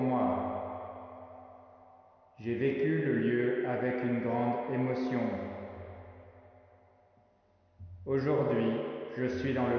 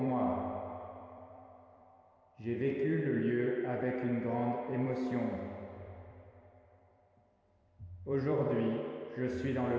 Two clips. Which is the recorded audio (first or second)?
first